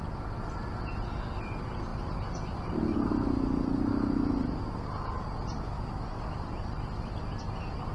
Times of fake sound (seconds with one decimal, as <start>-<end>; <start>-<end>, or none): none